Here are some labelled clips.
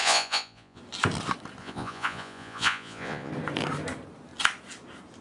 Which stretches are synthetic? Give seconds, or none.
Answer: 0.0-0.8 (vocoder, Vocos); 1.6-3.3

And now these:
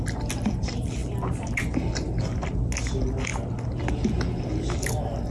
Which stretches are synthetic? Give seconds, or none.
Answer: none

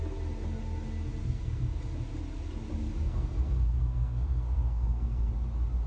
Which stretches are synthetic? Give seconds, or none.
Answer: 1.2-1.8 (codec, SNAC); 3.0-5.3

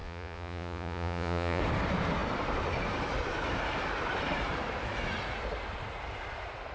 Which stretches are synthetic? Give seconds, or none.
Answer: 0.0-1.6 (vocoder, Vocos)

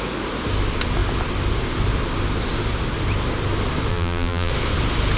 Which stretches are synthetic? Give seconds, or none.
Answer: 3.9-4.5 (vocoder, BigVGAN v2)

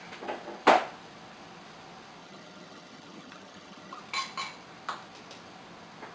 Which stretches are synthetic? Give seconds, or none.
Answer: 2.2-4.0 (vocoder, HiFi-GAN)

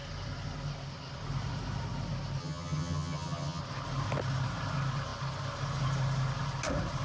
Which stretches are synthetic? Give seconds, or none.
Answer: 2.4-3.6 (vocoder, HiFi-GAN)